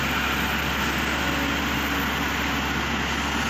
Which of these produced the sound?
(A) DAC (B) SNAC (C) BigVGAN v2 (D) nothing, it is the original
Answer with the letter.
D